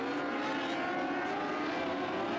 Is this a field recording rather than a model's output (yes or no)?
yes